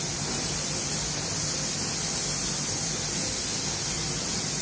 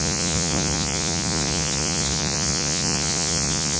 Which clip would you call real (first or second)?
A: first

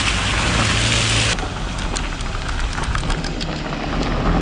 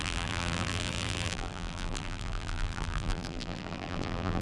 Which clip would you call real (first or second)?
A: first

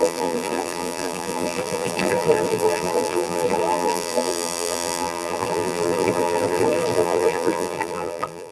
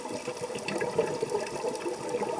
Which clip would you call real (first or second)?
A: second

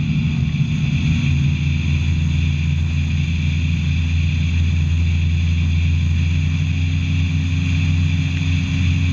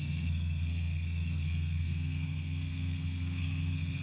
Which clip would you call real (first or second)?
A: first